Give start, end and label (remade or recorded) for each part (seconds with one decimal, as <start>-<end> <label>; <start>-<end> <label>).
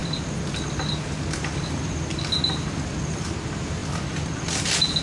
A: 0.0-5.0 recorded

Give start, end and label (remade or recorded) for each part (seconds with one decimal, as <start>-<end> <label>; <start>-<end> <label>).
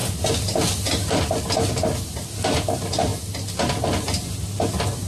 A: 0.0-5.1 recorded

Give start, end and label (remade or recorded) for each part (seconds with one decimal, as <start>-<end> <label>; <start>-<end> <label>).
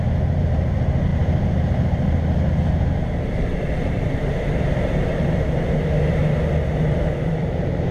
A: 0.0-6.2 remade; 6.2-7.3 recorded; 7.3-7.9 remade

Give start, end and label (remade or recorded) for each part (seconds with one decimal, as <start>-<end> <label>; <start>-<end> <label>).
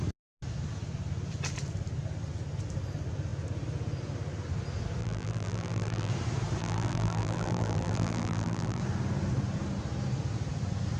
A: 0.0-5.0 recorded; 5.0-6.1 remade; 6.1-6.6 recorded; 6.6-8.8 remade; 8.8-11.0 recorded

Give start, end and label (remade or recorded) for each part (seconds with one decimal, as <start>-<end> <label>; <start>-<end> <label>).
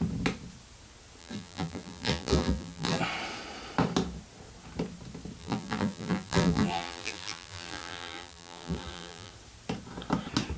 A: 0.0-1.2 recorded; 1.2-3.0 remade; 3.0-5.4 recorded; 5.4-9.3 remade; 9.3-10.6 recorded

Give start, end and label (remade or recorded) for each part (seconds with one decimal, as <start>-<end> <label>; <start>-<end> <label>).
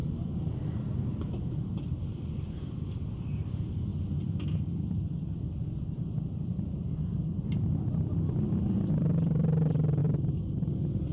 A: 0.0-1.4 recorded; 1.4-11.1 remade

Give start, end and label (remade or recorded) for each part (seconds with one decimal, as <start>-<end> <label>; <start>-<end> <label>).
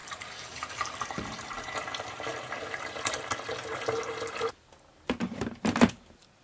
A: 0.0-1.7 remade; 1.7-6.4 recorded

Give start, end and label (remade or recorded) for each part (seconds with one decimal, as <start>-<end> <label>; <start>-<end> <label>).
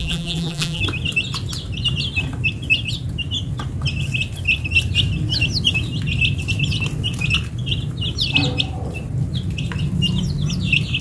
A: 0.0-0.8 remade; 0.8-11.0 recorded